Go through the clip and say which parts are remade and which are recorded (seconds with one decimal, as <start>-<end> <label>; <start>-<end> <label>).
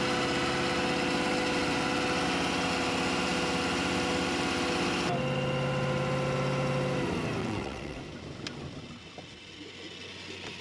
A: 0.0-7.4 recorded; 7.4-8.0 remade; 8.0-10.6 recorded